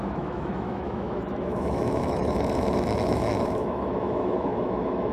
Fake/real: fake